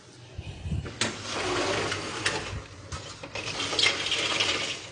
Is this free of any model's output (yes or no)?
yes